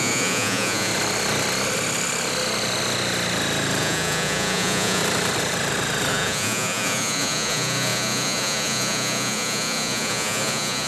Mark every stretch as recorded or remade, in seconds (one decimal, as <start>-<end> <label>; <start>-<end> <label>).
0.0-0.9 remade; 0.9-3.8 recorded; 3.8-5.0 remade; 5.0-6.1 recorded; 6.1-10.9 remade